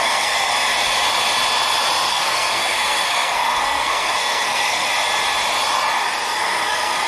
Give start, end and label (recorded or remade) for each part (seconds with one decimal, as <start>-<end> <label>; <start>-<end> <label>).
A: 0.0-0.5 remade; 0.5-2.1 recorded; 2.1-4.9 remade; 4.9-6.4 recorded; 6.4-7.1 remade